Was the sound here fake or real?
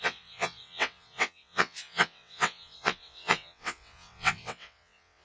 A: fake